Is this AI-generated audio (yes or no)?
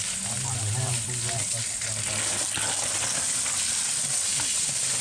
no